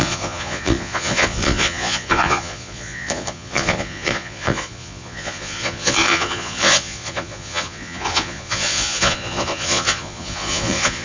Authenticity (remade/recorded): remade